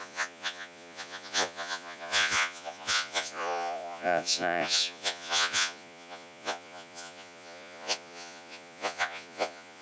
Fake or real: fake